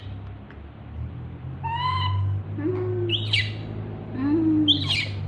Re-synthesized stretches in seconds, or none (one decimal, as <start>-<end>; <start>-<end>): none